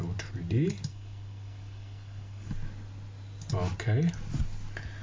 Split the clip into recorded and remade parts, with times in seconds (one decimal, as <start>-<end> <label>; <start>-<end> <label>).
0.0-0.9 recorded; 0.9-2.5 remade; 2.5-5.0 recorded